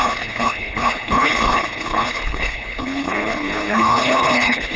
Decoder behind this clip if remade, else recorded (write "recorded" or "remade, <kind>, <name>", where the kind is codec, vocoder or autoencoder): remade, codec, HILCodec